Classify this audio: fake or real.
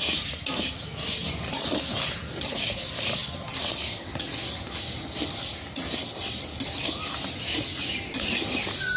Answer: real